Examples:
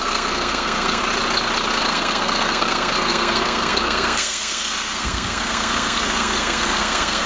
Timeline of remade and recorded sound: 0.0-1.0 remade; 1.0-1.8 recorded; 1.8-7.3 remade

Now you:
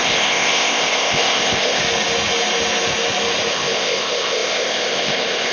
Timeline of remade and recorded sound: 0.0-1.8 remade; 1.8-3.5 recorded; 3.5-5.5 remade